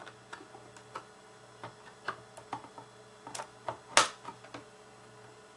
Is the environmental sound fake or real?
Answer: real